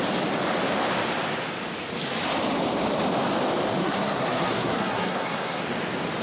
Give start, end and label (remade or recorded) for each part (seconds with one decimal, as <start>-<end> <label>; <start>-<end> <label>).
0.0-3.8 recorded; 3.8-5.6 remade; 5.6-6.2 recorded